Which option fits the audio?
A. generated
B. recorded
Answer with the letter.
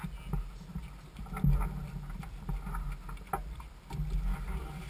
B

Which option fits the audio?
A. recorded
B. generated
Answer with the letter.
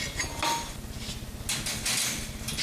A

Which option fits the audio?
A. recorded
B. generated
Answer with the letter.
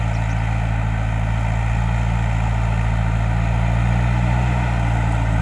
A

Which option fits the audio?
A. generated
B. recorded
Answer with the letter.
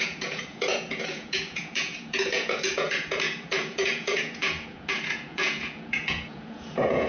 A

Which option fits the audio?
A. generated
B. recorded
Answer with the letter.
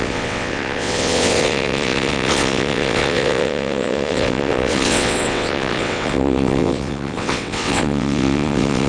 A